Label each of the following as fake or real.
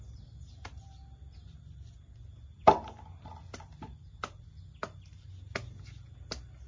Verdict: real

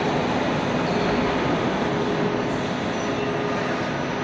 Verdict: real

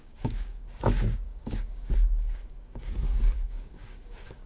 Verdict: fake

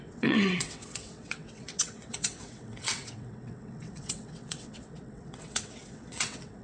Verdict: fake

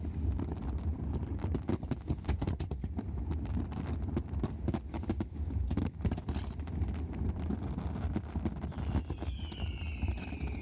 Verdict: real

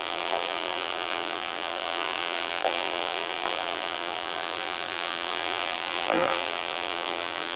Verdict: fake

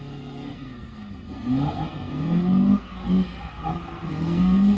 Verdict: fake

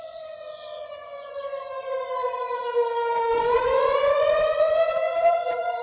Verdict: fake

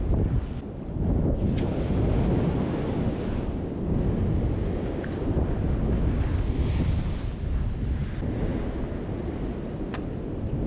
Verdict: real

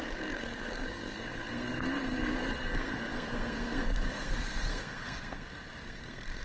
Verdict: fake